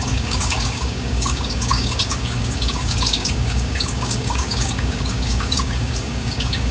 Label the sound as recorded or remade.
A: remade